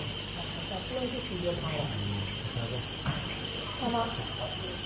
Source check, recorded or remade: recorded